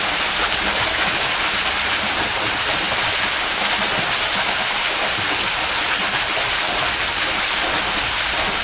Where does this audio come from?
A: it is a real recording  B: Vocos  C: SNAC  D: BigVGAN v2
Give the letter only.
A